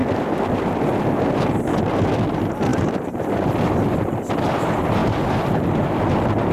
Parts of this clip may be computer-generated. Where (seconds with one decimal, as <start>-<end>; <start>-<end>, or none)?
0.0-0.7; 2.7-4.3; 5.0-5.7